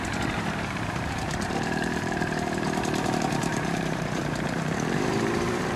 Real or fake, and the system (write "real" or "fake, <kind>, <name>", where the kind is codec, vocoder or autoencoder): fake, vocoder, BigVGAN v2